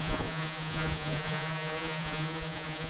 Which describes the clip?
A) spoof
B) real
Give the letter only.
A